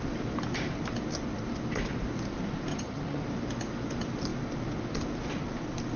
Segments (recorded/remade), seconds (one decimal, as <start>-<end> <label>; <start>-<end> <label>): 0.0-2.7 recorded; 2.7-3.2 remade; 3.2-6.0 recorded